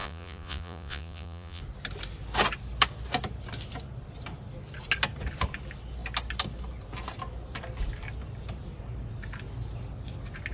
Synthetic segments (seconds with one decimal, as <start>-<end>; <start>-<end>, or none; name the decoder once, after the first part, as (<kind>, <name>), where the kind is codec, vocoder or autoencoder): 0.0-1.6 (vocoder, Vocos)